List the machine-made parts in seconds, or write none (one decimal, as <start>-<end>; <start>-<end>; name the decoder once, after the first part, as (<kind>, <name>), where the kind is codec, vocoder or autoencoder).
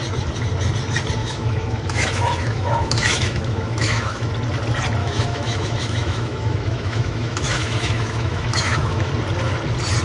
1.2-4.3 (autoencoder, DAC-VAE); 5.0-9.1